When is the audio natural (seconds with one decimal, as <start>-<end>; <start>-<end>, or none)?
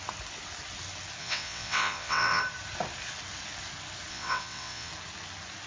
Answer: 0.0-1.2; 2.4-4.1; 4.9-5.7